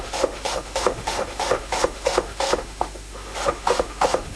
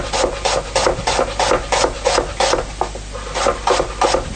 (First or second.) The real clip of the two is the second